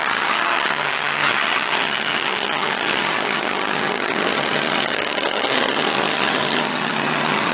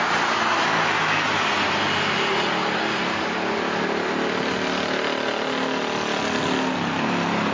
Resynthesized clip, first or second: first